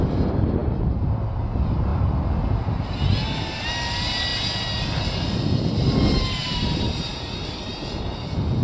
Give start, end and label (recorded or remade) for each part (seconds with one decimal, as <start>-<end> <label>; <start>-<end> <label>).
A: 0.0-8.6 recorded